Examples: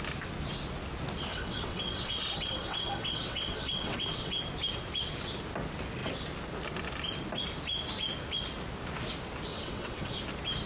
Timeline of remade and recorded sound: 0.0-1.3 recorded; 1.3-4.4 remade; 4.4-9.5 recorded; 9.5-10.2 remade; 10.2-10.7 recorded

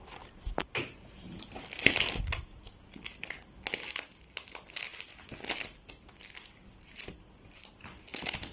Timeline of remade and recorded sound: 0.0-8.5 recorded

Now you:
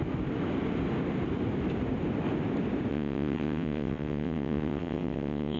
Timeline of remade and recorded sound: 0.0-2.9 recorded; 2.9-5.6 remade